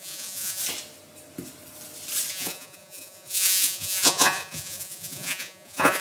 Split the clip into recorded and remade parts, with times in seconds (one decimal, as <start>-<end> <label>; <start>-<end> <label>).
0.0-0.6 remade; 0.6-2.3 recorded; 2.3-6.0 remade